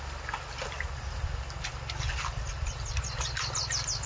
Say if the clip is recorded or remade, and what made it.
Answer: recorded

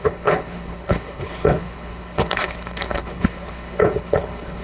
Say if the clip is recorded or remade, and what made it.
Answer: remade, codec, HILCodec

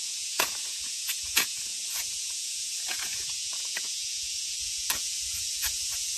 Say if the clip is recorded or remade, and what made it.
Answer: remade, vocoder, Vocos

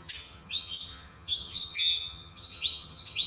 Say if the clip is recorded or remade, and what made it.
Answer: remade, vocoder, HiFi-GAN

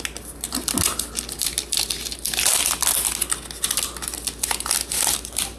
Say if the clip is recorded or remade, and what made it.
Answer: recorded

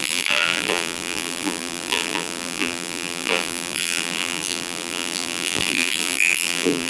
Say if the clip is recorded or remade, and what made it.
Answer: remade, vocoder, BigVGAN v2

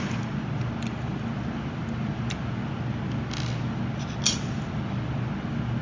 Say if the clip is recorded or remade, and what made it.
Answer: recorded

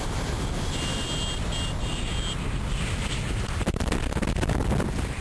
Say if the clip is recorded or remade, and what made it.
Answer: recorded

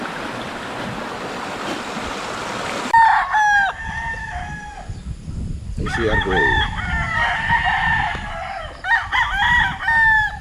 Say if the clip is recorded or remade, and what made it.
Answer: recorded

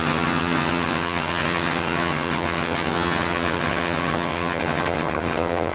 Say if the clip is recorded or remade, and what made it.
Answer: remade, vocoder, HiFi-GAN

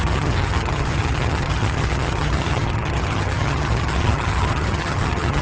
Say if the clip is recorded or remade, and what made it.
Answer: remade, vocoder, HiFi-GAN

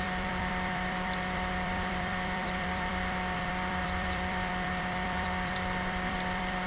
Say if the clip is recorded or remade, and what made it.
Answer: remade, vocoder, BigVGAN v2